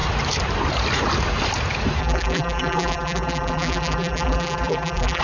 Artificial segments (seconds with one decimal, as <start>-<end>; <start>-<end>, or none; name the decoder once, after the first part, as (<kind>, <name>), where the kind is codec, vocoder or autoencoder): 2.0-5.2 (vocoder, BigVGAN v2)